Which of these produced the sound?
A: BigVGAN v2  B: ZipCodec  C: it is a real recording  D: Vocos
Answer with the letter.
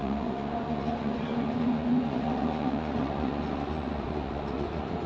D